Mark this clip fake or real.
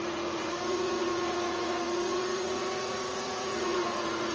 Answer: fake